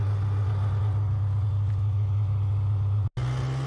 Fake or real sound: real